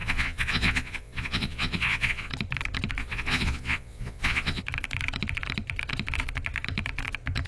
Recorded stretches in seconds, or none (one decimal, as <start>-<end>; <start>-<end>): 2.3-3.0; 4.6-7.5

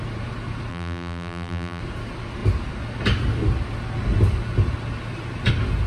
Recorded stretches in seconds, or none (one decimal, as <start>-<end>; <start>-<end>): 0.0-0.7; 1.8-5.9